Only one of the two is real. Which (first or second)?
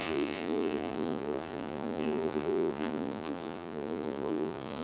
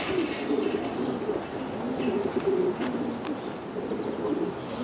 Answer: second